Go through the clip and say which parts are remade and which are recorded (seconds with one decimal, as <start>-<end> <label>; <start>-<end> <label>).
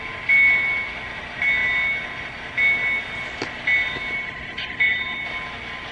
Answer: 0.0-5.9 recorded